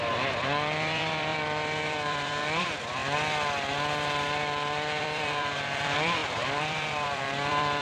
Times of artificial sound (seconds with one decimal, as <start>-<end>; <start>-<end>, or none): 0.0-3.0; 5.0-7.8